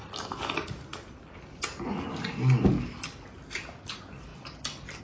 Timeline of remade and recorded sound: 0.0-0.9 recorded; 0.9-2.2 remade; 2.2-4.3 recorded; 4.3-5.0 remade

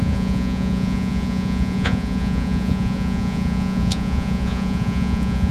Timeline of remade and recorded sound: 0.0-5.5 remade